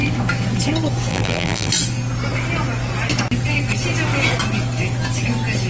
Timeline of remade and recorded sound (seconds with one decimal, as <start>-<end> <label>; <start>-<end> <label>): 0.0-1.1 recorded; 1.1-1.7 remade; 1.7-5.7 recorded